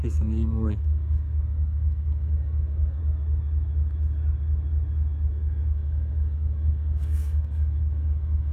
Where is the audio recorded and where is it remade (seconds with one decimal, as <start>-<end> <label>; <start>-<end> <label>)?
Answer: 0.0-3.0 remade; 3.0-5.3 recorded; 5.3-8.5 remade